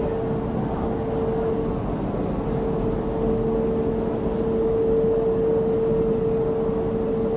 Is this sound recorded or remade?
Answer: recorded